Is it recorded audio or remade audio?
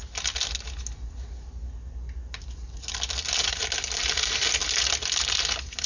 recorded